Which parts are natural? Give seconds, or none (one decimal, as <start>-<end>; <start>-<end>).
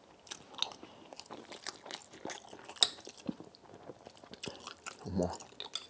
0.0-5.9